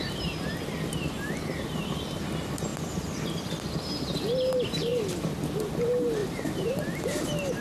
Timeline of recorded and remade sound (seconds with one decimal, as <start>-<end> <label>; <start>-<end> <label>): 0.0-6.2 recorded; 6.2-6.8 remade; 6.8-7.6 recorded